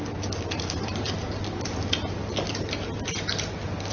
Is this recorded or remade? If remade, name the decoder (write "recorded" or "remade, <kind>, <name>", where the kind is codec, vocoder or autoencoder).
recorded